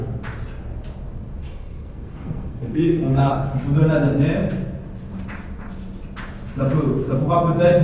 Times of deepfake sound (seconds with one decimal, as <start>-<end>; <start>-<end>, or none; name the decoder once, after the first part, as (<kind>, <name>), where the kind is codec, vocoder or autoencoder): 1.4-3.3 (codec, SNAC)